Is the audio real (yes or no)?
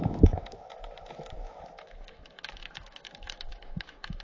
no